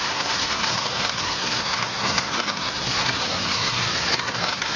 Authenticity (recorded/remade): remade